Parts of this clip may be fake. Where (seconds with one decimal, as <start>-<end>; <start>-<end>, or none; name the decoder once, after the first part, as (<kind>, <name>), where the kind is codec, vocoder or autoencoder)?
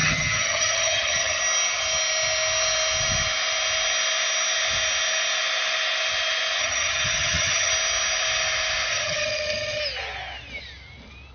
0.0-1.4 (vocoder, HiFi-GAN); 6.6-7.7; 8.9-9.8